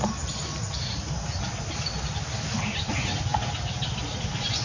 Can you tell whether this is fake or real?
real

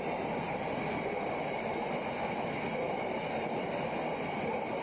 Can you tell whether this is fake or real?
fake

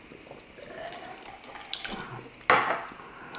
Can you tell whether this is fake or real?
real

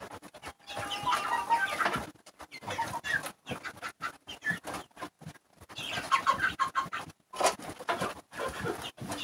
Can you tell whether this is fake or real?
real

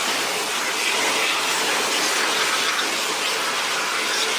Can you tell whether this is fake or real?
real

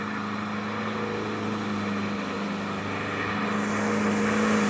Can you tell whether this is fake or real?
real